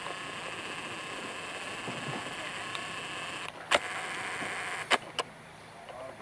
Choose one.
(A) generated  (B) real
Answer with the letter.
B